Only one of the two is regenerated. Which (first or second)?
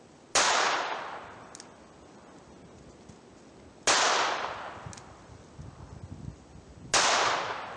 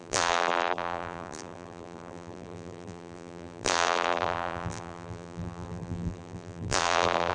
second